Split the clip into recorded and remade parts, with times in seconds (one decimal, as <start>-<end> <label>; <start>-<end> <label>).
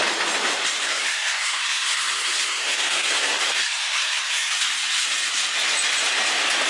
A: 0.0-0.8 recorded; 0.8-4.5 remade; 4.5-6.7 recorded